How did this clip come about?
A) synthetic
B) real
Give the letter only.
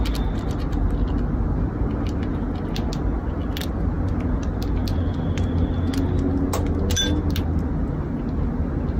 B